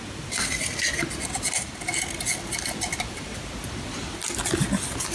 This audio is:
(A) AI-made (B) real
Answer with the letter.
B